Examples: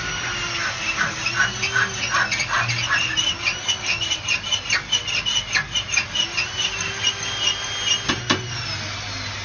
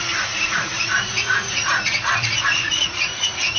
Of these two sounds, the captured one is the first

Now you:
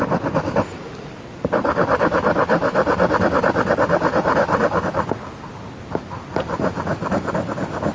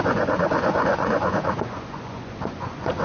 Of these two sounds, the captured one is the first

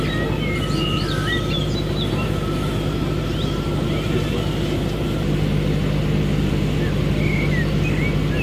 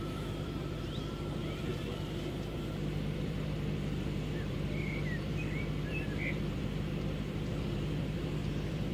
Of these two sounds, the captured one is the first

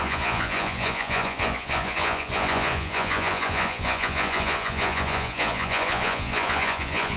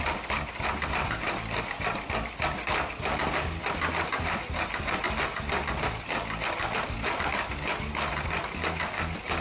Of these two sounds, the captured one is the second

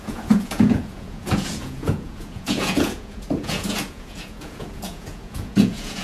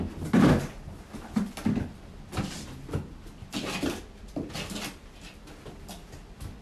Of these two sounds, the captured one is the second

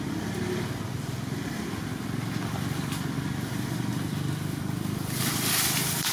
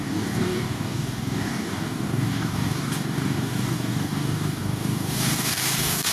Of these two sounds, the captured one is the first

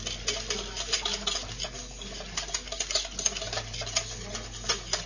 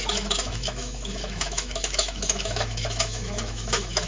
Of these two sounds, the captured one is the first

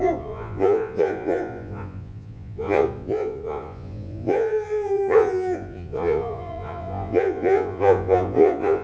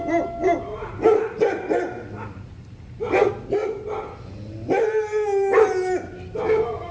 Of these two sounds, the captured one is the second